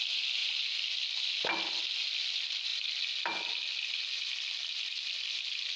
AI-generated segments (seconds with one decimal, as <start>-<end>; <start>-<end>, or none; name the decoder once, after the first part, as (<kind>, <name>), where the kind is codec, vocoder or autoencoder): none